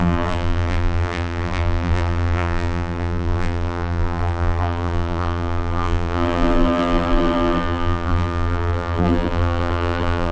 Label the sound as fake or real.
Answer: fake